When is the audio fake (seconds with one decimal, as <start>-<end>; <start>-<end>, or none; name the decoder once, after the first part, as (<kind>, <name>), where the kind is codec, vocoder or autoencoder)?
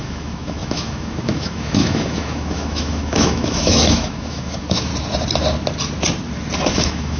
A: 0.0-4.9 (autoencoder, DAC-VAE); 6.7-7.2